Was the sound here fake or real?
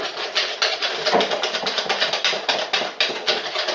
real